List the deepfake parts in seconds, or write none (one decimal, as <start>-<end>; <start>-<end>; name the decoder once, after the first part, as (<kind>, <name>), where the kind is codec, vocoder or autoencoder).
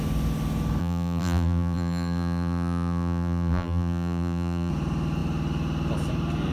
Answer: 0.8-4.7 (vocoder, BigVGAN v2)